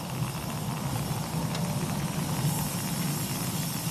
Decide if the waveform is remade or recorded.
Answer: recorded